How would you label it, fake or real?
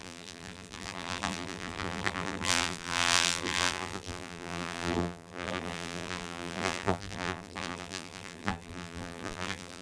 fake